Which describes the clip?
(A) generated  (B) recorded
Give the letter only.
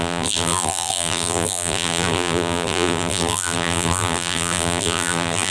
A